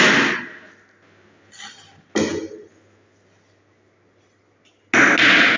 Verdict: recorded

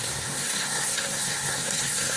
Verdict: remade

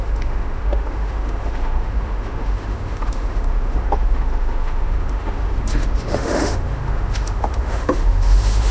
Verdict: remade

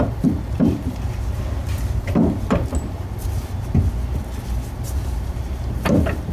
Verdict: recorded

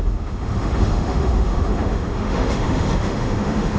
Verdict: remade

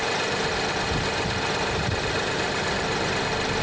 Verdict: recorded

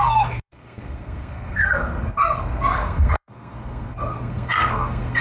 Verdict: remade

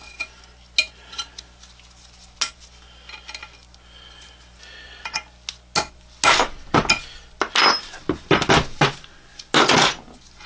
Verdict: recorded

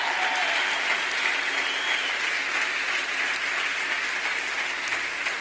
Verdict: recorded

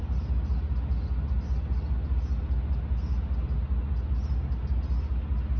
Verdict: recorded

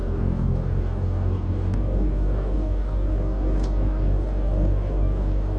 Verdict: remade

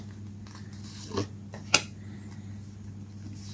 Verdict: recorded